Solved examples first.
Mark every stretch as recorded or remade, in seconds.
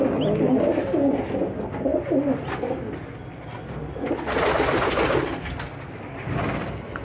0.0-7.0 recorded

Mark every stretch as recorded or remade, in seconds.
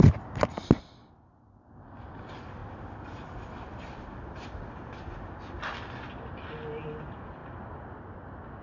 0.0-8.6 recorded